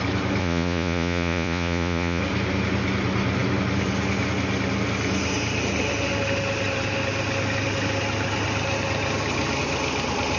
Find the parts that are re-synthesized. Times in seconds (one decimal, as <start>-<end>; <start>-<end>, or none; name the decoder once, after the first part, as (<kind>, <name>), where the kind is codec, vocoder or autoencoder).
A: 0.4-2.2 (vocoder, Vocos)